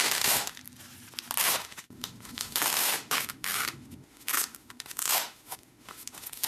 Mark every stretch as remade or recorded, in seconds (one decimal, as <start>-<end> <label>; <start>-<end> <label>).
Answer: 0.0-0.6 remade; 0.6-1.4 recorded; 1.4-6.5 remade